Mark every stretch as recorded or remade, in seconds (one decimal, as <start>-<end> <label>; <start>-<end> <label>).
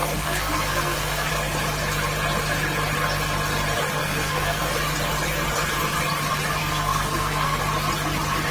0.0-1.3 remade; 1.3-4.0 recorded; 4.0-4.7 remade; 4.7-6.6 recorded; 6.6-7.6 remade; 7.6-8.5 recorded